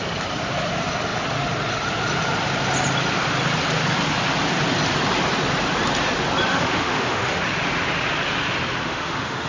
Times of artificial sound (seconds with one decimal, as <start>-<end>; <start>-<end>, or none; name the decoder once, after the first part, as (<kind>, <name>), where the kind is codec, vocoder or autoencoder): 6.5-7.4 (autoencoder, DAC-VAE); 8.8-9.5